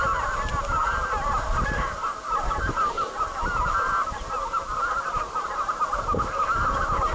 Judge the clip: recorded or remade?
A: recorded